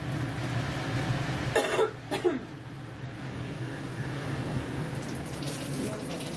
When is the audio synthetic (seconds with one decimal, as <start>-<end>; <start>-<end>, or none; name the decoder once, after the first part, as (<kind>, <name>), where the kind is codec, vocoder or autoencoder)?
3.2-4.9 (codec, DAC)